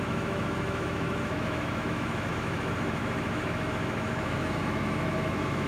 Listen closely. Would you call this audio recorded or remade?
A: remade